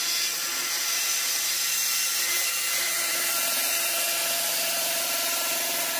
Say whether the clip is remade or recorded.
remade